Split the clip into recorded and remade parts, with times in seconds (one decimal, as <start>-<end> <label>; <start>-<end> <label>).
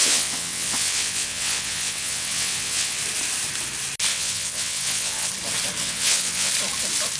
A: 0.0-3.0 remade; 3.0-4.1 recorded; 4.1-5.3 remade; 5.3-5.8 recorded; 5.8-6.5 remade; 6.5-7.2 recorded